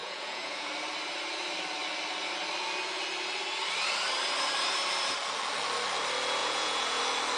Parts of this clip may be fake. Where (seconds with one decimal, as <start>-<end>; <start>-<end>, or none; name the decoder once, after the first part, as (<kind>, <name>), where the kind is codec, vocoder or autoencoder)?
0.0-0.7 (vocoder, Vocos); 6.4-7.0